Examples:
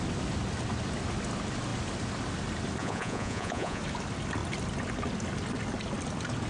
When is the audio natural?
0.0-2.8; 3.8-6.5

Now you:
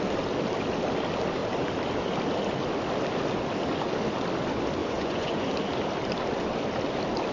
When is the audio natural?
0.0-4.8; 5.5-7.3

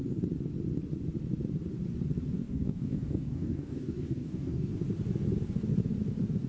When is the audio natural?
0.0-2.4; 4.7-6.5